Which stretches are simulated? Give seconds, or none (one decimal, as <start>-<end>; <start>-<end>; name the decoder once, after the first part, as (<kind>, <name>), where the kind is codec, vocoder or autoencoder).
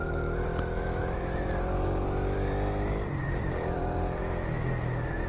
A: 1.0-4.2 (vocoder, BigVGAN v2)